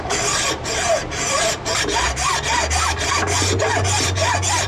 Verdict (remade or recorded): recorded